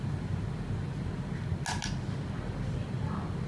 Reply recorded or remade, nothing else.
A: recorded